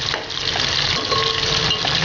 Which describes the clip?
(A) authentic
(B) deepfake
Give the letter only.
A